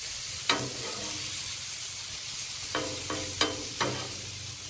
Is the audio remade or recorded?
recorded